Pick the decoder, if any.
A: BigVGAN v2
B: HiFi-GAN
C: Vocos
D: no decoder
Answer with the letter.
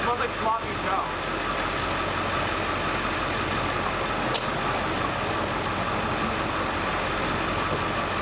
D